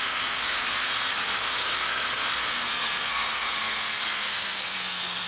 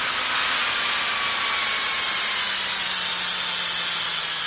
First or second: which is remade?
first